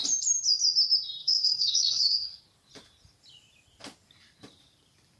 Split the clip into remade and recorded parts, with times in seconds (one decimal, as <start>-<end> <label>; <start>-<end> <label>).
0.0-1.2 recorded; 1.2-2.4 remade; 2.4-5.2 recorded